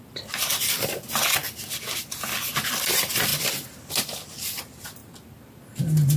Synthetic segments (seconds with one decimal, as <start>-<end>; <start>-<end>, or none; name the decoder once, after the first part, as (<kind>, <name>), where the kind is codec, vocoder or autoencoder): 0.0-1.4 (vocoder, BigVGAN v2); 2.5-5.0

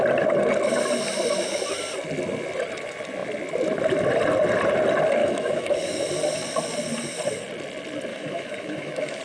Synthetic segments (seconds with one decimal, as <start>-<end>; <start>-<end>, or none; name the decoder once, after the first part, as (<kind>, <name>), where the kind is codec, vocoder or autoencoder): 5.2-6.1 (autoencoder, DAC-VAE); 8.1-9.2

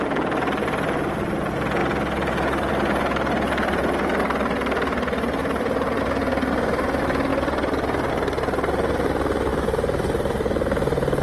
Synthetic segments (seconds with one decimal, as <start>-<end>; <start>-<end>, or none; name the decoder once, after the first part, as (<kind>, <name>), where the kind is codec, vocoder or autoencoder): 1.8-2.7 (vocoder, BigVGAN v2); 5.4-6.0

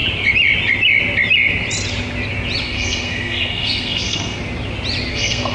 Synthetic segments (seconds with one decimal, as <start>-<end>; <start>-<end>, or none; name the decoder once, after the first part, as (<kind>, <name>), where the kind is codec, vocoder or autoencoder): 2.6-4.4 (codec, SNAC); 5.1-5.5

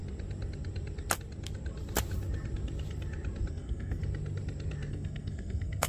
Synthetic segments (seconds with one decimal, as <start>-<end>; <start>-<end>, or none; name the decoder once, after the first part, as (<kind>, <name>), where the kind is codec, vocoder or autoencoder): 3.5-4.0 (codec, SNAC); 4.9-5.9

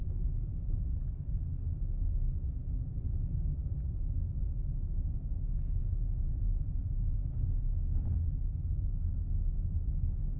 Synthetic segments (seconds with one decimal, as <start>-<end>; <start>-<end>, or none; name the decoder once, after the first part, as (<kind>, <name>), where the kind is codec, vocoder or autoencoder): 5.8-7.7 (vocoder, Vocos)